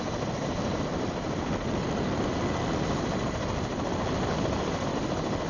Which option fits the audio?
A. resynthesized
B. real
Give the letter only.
B